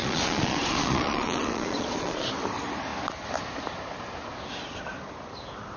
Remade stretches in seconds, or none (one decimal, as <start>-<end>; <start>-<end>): 0.0-2.3